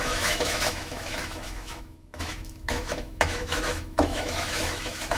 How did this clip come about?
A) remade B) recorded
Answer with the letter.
A